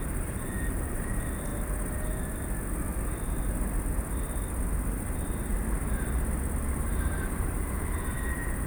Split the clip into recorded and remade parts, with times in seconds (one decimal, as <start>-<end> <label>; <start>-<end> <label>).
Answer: 0.0-1.5 remade; 1.5-5.0 recorded; 5.0-5.5 remade; 5.5-6.7 recorded; 6.7-8.7 remade